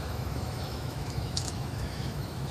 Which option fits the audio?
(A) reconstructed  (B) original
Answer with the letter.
A